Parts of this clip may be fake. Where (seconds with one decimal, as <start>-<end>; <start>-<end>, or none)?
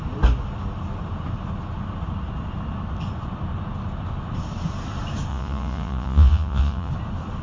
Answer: 5.3-6.9